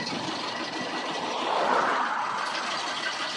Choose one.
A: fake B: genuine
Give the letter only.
B